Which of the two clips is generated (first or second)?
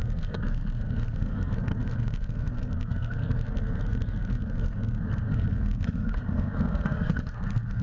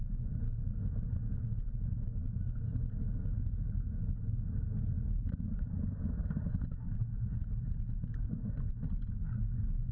first